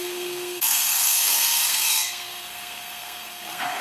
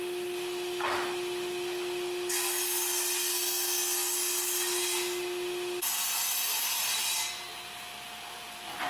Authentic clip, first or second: second